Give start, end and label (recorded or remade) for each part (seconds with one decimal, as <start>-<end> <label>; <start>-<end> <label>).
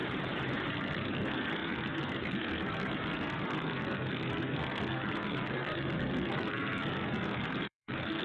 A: 0.0-0.7 recorded; 0.7-8.2 remade